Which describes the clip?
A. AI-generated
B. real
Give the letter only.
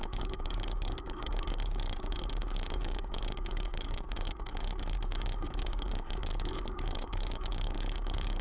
A